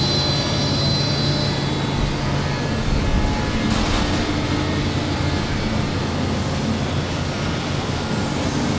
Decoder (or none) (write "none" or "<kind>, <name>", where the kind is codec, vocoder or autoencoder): none